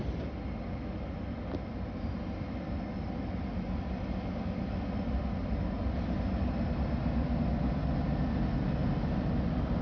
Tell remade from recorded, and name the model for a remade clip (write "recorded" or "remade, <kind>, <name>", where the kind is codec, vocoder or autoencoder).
recorded